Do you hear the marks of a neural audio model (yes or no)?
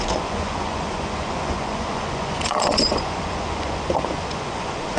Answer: yes